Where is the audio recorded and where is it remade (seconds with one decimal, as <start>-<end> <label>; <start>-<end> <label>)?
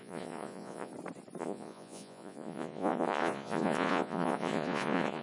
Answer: 0.0-0.9 remade; 0.9-1.4 recorded; 1.4-5.2 remade